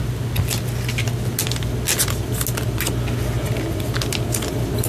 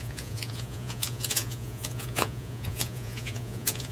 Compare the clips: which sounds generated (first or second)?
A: second